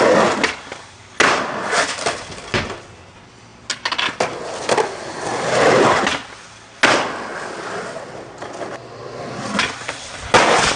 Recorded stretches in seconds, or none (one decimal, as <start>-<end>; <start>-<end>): 0.0-10.8

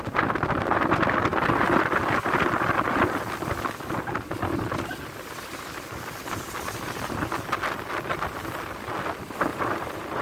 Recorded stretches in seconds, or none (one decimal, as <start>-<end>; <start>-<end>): 0.0-9.5

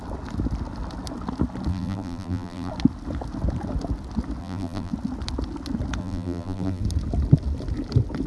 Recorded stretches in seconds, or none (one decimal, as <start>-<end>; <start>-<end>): 0.0-1.7; 2.7-4.4; 4.9-6.0; 6.8-8.3

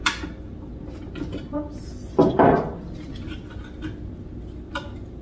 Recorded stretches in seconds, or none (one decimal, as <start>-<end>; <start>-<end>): 0.0-5.2

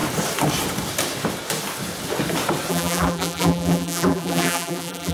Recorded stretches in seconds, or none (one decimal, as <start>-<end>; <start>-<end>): 0.0-2.7

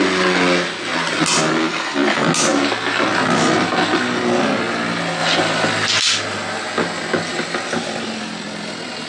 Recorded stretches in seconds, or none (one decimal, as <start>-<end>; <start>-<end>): 0.0-7.3